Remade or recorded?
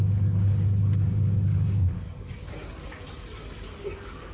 remade